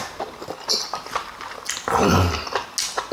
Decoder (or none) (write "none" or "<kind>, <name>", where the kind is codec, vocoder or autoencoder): none